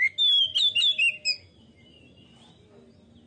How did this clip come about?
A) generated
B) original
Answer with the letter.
B